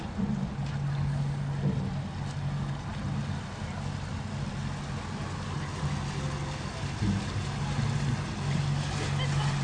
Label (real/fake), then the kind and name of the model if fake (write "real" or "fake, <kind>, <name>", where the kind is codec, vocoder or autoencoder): real